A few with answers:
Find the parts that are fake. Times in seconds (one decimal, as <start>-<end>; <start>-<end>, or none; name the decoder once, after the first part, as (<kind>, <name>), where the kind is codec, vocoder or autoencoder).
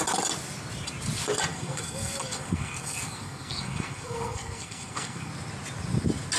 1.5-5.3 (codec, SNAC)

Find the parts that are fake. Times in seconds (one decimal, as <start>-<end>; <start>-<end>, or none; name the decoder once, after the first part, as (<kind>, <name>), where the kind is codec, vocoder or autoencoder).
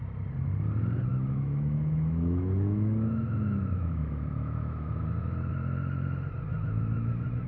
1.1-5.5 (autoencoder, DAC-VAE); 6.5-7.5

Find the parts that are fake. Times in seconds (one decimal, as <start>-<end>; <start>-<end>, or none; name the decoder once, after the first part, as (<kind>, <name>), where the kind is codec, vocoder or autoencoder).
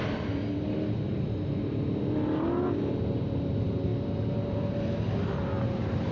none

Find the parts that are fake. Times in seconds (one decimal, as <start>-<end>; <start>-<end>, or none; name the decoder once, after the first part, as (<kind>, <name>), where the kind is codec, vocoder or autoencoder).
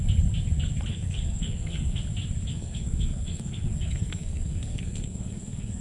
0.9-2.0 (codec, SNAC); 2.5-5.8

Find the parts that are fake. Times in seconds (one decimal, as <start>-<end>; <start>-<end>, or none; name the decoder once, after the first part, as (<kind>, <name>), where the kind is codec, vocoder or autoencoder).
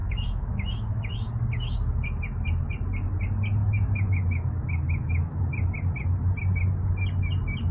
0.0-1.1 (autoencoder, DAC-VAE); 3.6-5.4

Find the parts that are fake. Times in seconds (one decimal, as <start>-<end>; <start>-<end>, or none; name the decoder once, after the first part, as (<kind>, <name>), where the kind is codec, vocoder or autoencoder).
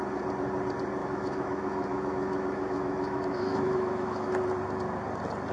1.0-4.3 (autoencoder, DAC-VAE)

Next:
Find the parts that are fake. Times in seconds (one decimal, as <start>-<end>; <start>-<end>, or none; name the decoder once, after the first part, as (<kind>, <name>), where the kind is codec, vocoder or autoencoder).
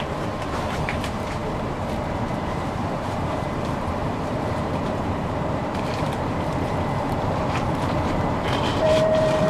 0.0-9.5 (vocoder, BigVGAN v2)